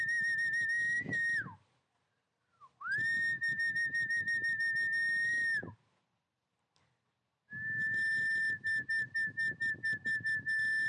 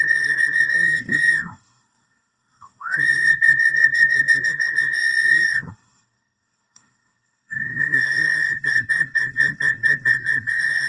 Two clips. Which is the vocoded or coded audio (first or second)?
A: second